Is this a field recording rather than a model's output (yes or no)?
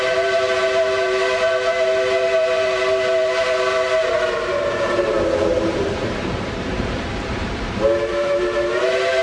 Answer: no